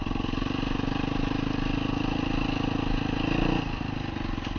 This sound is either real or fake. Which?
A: real